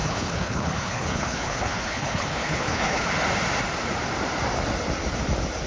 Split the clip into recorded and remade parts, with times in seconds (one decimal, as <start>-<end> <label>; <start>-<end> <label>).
0.0-3.1 remade; 3.1-5.7 recorded